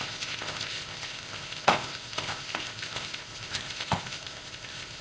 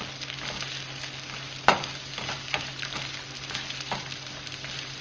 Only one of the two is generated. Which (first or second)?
first